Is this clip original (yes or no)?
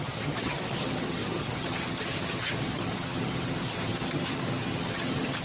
no